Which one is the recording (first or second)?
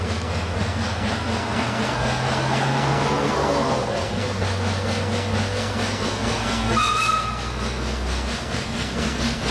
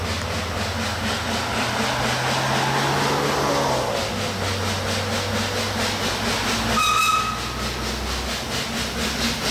second